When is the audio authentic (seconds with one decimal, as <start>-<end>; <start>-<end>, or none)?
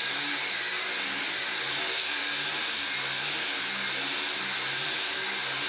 0.4-1.7; 2.2-5.7